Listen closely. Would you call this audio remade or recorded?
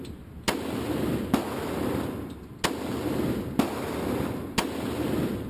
recorded